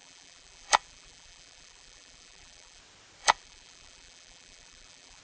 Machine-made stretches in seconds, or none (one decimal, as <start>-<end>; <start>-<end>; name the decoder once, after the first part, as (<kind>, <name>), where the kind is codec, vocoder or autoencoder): 0.0-2.8 (vocoder, BigVGAN v2); 3.2-5.2